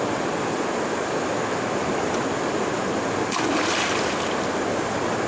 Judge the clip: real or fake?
real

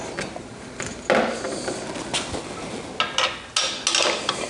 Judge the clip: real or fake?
real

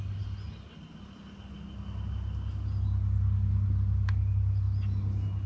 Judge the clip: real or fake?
real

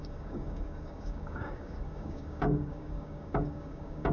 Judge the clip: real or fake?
fake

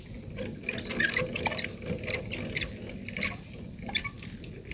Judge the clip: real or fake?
real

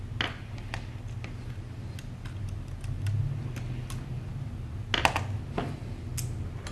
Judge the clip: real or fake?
real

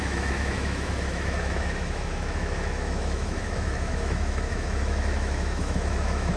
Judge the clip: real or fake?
fake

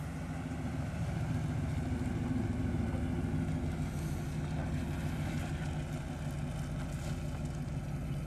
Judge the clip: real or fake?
real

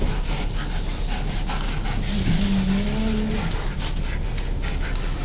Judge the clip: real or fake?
real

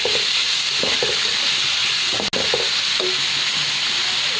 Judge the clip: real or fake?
real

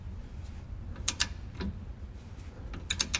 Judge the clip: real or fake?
real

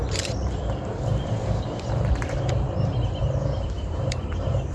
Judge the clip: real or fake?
fake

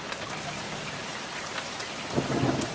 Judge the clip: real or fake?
real